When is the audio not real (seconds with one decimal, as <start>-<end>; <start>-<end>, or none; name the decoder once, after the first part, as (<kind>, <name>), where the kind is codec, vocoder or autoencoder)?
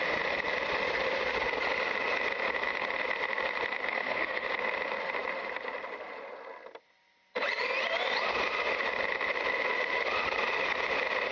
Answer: 3.9-4.5 (codec, SNAC)